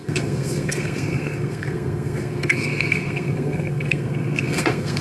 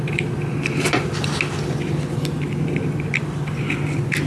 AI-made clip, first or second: first